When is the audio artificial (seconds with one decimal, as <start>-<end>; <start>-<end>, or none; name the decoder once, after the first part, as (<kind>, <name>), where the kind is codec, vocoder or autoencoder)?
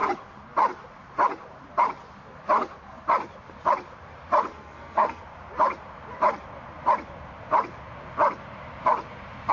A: 4.5-5.2 (codec, SNAC)